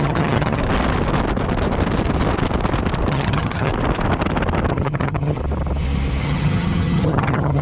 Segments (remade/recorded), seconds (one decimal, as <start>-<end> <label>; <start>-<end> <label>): 0.0-0.6 remade; 0.6-3.1 recorded; 3.1-3.7 remade; 3.7-4.7 recorded; 4.7-5.4 remade; 5.4-6.2 recorded; 6.2-7.6 remade